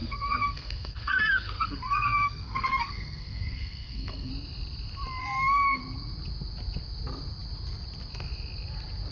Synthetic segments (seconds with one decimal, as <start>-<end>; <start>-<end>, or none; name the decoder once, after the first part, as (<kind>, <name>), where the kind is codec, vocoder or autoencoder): 0.0-4.3 (codec, SNAC); 5.2-5.8